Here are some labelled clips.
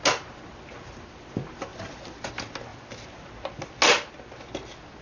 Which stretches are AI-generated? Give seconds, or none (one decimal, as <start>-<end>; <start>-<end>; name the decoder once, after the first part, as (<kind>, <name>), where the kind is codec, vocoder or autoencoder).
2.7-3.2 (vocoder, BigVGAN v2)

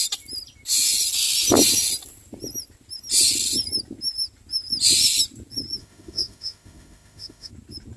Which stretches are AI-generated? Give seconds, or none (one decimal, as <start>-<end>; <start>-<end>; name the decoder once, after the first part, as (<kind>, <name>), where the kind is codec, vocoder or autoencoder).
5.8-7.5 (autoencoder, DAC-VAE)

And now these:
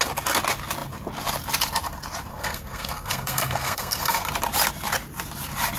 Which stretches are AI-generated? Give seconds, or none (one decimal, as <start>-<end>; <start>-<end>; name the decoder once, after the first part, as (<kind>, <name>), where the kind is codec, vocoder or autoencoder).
2.3-4.3 (codec, SNAC)

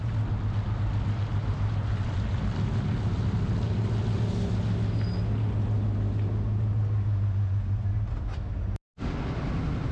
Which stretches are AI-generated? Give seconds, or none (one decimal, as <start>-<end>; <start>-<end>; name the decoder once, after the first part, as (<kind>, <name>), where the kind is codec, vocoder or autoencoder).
1.3-3.1 (vocoder, BigVGAN v2)

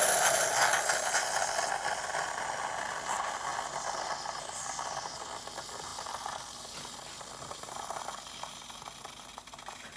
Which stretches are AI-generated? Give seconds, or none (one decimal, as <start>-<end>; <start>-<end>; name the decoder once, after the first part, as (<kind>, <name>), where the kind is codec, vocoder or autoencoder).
none

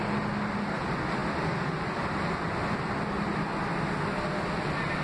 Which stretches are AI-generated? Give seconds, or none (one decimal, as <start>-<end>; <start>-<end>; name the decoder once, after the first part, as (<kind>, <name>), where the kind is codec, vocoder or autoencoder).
none